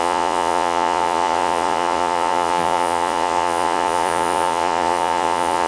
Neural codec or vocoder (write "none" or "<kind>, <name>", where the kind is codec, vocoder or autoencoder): vocoder, Vocos